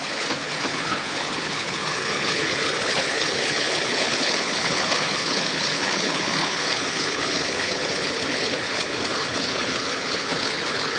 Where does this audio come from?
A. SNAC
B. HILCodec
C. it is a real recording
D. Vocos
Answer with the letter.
B